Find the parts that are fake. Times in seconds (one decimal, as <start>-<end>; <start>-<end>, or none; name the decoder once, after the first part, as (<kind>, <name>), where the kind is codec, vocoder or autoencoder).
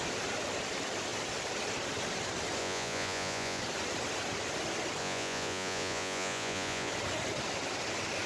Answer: 2.6-3.6 (vocoder, Vocos); 5.0-6.9